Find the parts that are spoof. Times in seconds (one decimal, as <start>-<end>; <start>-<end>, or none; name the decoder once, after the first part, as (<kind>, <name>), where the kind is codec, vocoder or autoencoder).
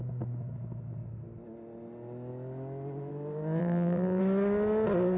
3.6-4.2 (vocoder, BigVGAN v2)